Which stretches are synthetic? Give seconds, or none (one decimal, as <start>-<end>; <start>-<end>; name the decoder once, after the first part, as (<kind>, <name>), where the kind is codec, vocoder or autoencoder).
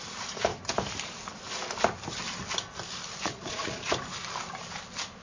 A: 3.2-3.9 (vocoder, Vocos)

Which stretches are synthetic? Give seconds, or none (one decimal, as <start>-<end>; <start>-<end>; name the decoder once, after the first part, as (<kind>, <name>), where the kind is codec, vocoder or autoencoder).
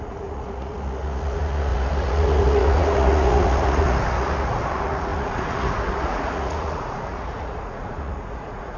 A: 0.0-8.8 (vocoder, Vocos)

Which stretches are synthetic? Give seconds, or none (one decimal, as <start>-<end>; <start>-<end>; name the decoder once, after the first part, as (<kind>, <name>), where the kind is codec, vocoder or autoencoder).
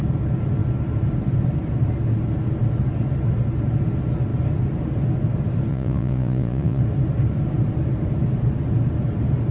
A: 5.7-6.8 (vocoder, Vocos)